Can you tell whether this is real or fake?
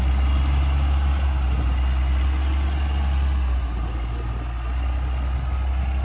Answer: real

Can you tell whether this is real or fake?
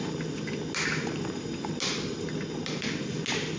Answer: real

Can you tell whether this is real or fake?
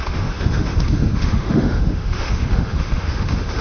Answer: fake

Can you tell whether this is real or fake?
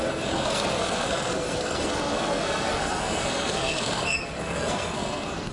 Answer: fake